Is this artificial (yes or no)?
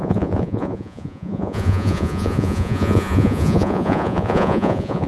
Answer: yes